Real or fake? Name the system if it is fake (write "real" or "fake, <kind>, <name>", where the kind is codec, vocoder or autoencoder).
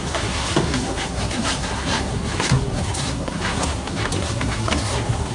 fake, codec, SNAC